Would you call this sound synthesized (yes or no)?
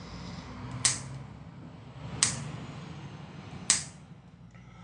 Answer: no